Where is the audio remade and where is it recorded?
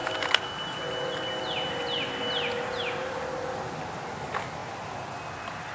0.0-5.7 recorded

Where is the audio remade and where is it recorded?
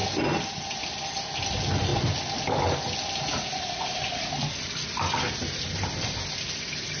0.0-7.0 recorded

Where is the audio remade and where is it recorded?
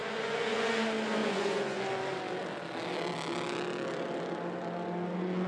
0.0-0.7 remade; 0.7-1.2 recorded; 1.2-1.8 remade; 1.8-5.5 recorded